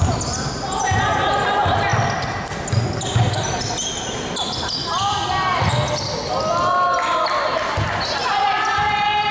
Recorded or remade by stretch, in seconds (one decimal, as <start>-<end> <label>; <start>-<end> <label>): 0.0-9.3 recorded